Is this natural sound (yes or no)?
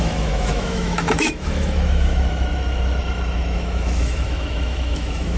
no